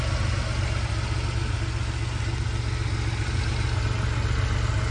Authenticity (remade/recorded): recorded